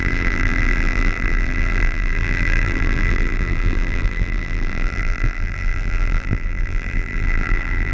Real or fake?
fake